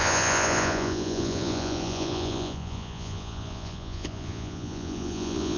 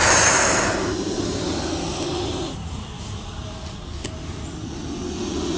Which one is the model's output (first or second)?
first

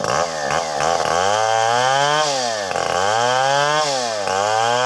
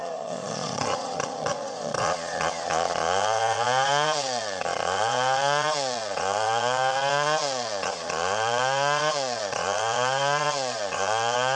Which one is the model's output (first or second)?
second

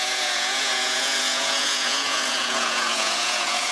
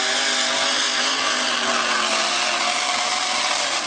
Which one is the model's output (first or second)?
first